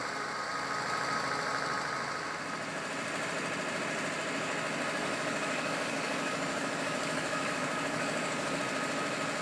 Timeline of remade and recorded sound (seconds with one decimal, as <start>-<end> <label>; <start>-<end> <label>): 0.0-5.0 recorded; 5.0-8.6 remade; 8.6-9.4 recorded